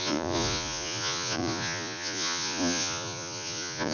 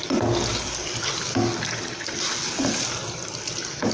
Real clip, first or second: second